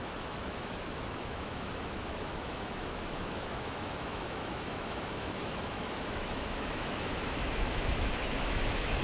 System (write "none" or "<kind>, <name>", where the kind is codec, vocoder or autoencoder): autoencoder, DAC-VAE